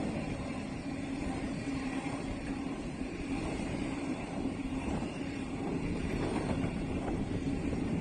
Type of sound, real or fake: fake